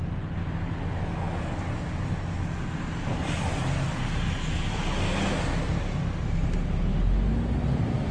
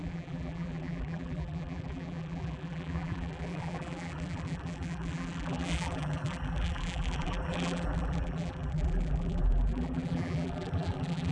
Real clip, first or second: first